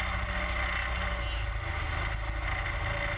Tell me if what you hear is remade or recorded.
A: recorded